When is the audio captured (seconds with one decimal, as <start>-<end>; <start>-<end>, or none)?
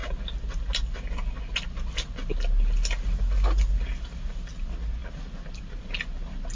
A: 0.0-6.5